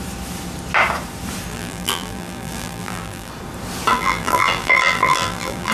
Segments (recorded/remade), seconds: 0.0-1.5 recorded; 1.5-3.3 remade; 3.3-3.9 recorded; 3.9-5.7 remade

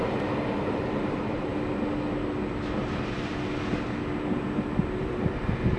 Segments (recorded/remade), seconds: 0.0-1.5 remade; 1.5-5.0 recorded; 5.0-5.8 remade

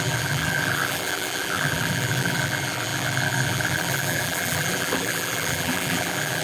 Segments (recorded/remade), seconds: 0.0-6.4 remade

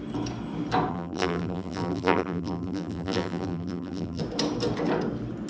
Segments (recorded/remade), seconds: 0.0-0.9 recorded; 0.9-4.2 remade; 4.2-5.5 recorded

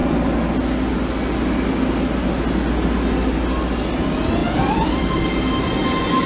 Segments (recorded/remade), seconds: 0.0-0.5 remade; 0.5-4.4 recorded; 4.4-5.2 remade; 5.2-6.3 recorded

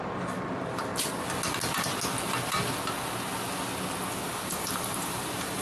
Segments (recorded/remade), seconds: 0.0-0.9 remade; 0.9-4.3 recorded; 4.3-5.6 remade